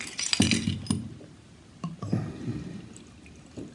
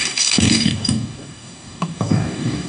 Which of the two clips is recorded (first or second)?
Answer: first